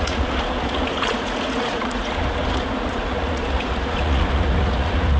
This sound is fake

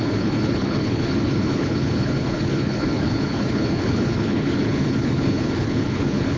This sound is fake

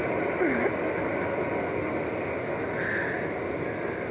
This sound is real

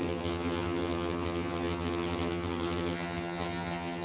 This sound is fake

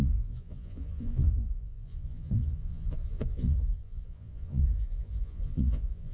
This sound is fake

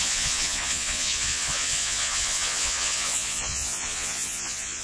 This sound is fake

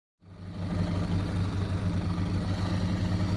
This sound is real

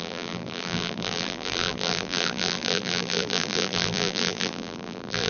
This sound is fake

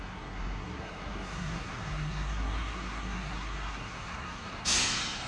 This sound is fake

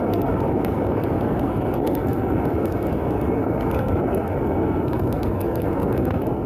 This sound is fake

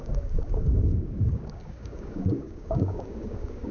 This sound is fake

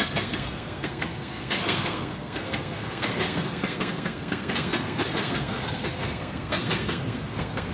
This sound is fake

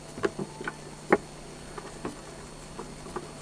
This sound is real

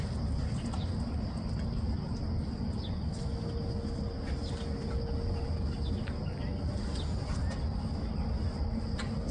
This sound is real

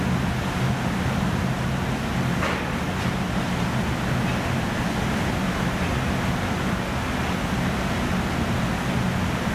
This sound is real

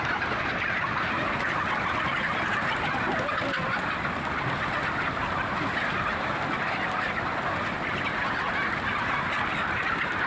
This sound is real